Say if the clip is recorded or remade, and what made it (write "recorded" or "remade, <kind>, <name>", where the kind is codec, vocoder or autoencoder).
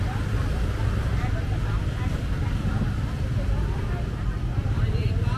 recorded